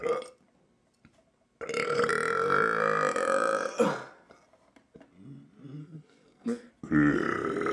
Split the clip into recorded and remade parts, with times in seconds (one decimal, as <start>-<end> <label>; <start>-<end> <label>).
0.0-5.8 recorded; 5.8-6.7 remade; 6.7-7.7 recorded